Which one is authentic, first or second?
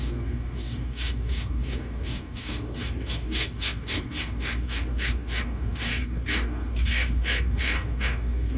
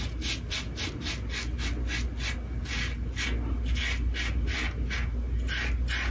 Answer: second